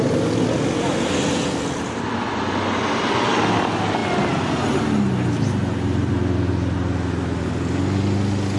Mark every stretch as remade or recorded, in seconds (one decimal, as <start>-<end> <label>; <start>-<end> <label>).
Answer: 0.0-8.6 recorded